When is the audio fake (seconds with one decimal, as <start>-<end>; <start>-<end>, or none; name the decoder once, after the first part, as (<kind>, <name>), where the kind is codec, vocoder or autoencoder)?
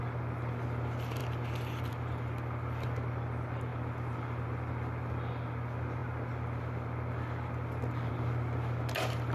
none